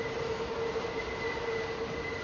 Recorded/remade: recorded